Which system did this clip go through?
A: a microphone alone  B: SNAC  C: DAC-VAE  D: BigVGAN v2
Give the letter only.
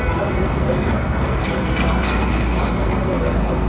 B